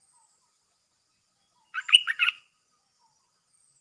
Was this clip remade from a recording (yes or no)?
yes